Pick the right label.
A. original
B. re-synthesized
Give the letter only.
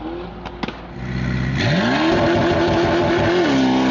A